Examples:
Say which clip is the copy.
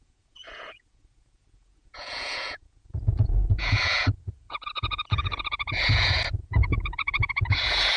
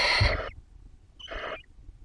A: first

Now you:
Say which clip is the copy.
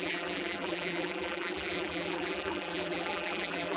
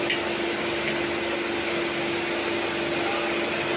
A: first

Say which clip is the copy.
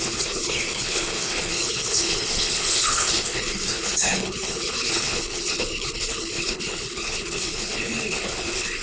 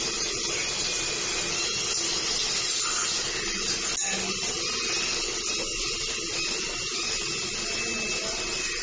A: first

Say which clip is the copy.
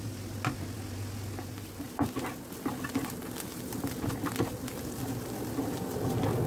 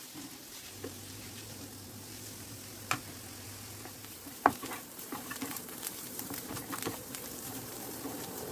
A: second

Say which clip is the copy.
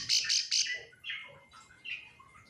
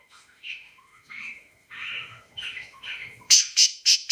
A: second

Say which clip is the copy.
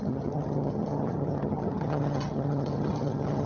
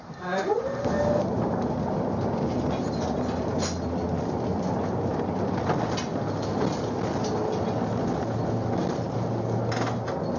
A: first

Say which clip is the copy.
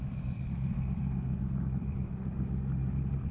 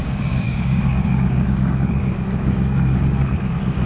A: second